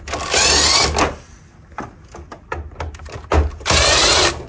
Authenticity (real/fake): real